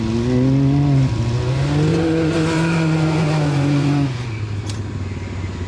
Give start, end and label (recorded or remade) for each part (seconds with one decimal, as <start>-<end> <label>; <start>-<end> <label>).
0.0-1.9 recorded; 1.9-4.3 remade; 4.3-5.7 recorded